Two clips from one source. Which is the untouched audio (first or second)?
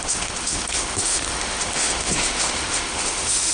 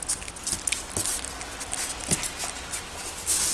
second